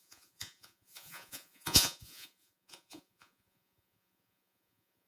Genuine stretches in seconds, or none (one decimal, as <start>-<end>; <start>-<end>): none